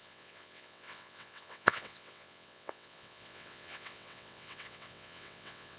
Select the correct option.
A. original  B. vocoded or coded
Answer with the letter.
B